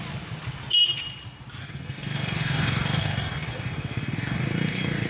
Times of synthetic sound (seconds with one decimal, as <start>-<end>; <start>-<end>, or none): 1.6-5.1